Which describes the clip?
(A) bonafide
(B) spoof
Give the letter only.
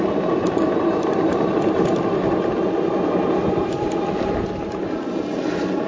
A